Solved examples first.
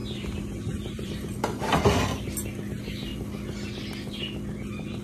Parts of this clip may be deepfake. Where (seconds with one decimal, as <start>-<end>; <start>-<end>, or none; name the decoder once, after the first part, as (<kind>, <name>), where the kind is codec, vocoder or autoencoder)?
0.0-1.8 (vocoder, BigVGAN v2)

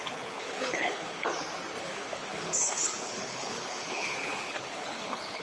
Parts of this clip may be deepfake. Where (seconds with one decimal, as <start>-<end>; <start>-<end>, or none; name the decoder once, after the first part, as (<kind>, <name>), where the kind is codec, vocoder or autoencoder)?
0.0-1.3 (codec, HILCodec); 1.8-5.4

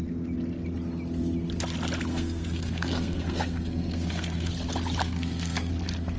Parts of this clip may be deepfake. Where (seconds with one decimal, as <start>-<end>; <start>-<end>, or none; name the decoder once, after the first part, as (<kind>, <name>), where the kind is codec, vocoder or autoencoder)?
2.1-4.5 (codec, SNAC); 5.0-5.7

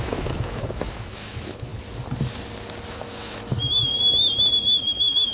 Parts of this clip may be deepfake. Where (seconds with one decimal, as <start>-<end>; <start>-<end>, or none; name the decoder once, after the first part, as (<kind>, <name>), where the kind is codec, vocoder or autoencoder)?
0.0-1.7 (autoencoder, DAC-VAE); 2.9-3.9; 4.8-5.3

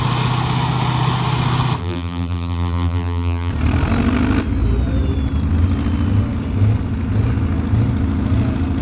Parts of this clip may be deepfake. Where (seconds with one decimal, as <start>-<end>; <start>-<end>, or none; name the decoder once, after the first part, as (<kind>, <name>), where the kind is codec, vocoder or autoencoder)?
1.8-3.5 (vocoder, BigVGAN v2)

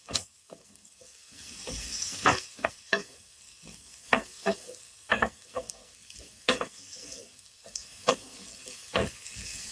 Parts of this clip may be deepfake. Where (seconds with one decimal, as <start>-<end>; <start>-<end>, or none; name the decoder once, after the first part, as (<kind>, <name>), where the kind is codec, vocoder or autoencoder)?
0.0-9.7 (codec, SNAC)